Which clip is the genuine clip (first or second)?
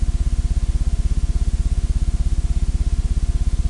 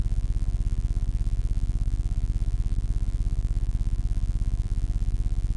first